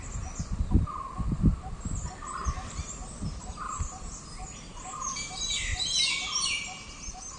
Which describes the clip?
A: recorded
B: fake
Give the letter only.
A